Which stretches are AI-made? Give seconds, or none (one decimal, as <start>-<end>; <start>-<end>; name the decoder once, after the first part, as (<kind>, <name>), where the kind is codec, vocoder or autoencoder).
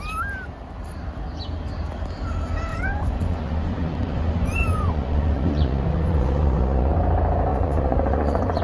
2.7-6.9 (vocoder, Vocos); 7.5-8.6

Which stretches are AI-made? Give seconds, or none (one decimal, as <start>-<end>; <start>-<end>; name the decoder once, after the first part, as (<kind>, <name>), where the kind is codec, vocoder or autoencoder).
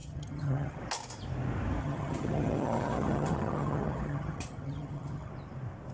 0.0-0.8 (vocoder, HiFi-GAN); 1.8-5.3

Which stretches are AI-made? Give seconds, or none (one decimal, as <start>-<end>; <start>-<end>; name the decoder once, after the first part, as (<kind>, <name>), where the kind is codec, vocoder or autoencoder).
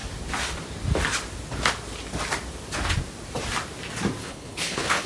4.2-5.1 (codec, HILCodec)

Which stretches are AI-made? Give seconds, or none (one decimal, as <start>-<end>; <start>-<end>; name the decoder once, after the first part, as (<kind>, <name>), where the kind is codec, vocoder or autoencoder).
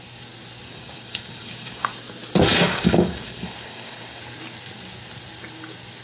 0.7-1.9 (codec, DAC); 2.5-4.2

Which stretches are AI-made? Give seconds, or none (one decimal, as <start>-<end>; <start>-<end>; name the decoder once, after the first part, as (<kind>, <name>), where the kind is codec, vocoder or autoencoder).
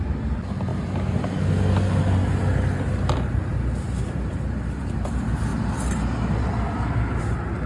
none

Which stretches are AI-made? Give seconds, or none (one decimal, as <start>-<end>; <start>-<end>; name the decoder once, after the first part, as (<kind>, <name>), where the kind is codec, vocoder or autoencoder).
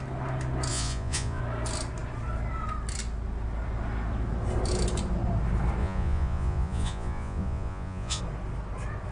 0.7-1.4 (vocoder, Vocos); 5.8-8.2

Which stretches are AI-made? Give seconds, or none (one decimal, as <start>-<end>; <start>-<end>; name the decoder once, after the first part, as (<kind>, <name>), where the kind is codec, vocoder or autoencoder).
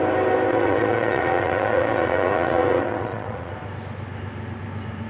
0.5-3.5 (vocoder, Vocos)